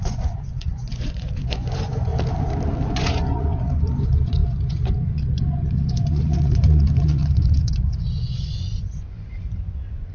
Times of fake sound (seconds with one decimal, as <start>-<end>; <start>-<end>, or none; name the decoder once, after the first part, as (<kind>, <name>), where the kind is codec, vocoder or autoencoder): 0.0-2.1 (vocoder, Vocos); 2.9-10.1